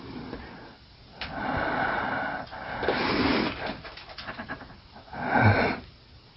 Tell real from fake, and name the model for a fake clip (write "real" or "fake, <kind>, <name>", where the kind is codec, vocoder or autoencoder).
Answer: real